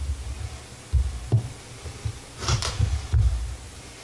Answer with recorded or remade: recorded